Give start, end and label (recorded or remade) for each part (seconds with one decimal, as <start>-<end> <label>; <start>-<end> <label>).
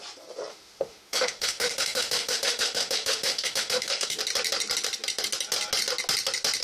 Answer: 0.0-0.5 recorded; 0.5-4.2 remade; 4.2-6.6 recorded